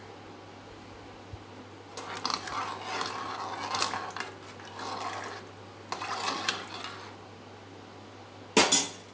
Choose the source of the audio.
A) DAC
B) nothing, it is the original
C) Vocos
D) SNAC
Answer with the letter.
B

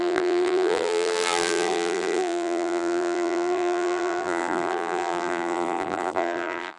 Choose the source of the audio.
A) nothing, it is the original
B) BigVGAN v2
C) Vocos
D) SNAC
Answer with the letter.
B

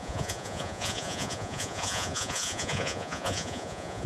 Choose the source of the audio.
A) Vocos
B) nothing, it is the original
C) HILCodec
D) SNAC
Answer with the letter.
A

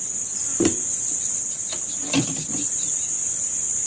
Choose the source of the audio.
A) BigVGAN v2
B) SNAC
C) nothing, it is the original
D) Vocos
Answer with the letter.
C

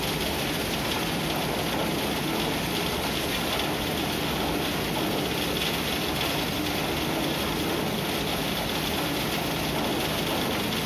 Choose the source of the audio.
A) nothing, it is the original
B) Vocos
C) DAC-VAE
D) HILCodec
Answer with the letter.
A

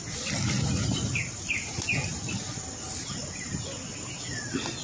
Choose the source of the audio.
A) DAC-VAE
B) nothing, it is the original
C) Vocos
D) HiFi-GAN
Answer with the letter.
B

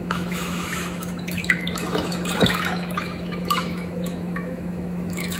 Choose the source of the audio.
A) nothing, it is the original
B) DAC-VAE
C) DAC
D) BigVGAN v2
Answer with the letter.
B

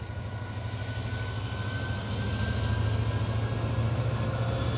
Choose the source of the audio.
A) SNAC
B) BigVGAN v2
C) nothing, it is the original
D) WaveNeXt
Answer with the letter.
C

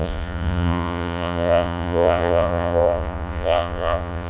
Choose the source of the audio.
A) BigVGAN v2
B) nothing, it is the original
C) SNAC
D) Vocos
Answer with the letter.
D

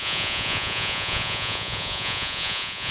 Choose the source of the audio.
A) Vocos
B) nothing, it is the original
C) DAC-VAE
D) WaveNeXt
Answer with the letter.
A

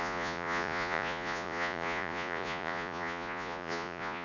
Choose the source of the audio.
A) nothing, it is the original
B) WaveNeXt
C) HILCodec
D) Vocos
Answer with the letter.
D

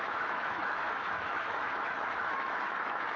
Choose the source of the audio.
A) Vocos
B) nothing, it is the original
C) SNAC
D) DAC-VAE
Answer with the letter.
D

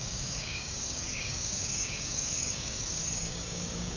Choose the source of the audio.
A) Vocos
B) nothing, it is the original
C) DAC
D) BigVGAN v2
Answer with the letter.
C